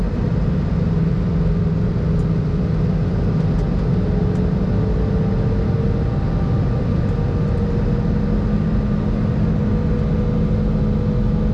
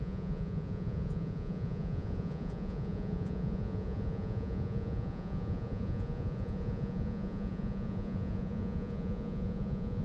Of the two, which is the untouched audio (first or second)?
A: first